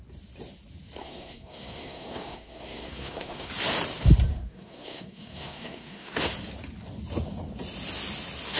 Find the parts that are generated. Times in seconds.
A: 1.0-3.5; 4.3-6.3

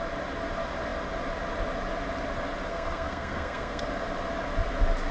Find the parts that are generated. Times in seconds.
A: 2.7-3.9

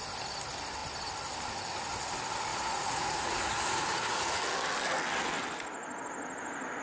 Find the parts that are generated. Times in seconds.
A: 2.5-4.4

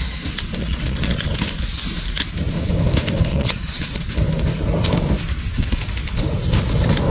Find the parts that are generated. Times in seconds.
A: 0.6-1.3; 3.3-4.1